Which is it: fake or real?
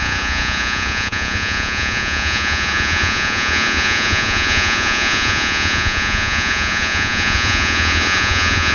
fake